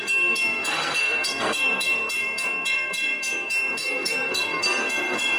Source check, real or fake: fake